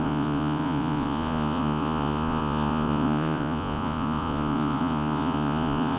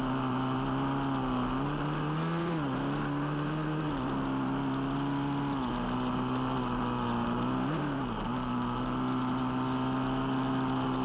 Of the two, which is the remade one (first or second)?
first